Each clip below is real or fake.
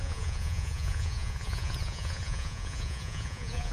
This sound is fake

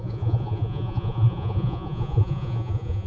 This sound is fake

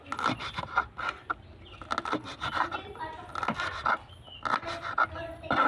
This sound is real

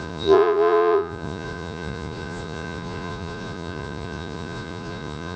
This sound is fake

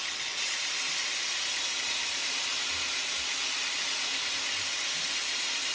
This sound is real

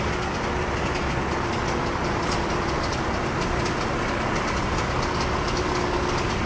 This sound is real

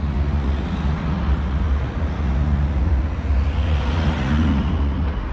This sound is fake